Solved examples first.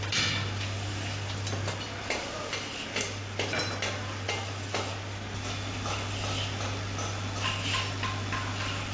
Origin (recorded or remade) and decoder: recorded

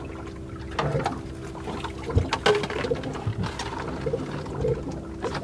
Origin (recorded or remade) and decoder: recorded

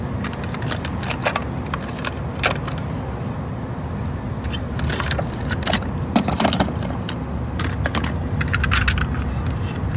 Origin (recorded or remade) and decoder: recorded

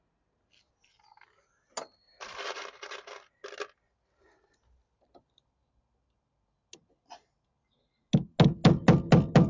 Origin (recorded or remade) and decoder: recorded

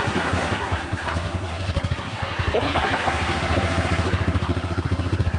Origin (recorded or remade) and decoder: remade, codec, SNAC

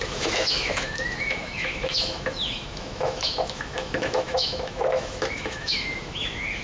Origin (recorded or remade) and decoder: remade, autoencoder, DAC-VAE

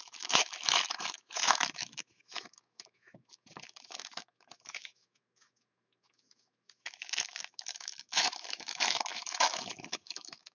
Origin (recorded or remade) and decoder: remade, autoencoder, DAC-VAE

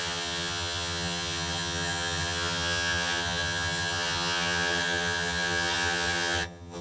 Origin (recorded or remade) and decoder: remade, vocoder, HiFi-GAN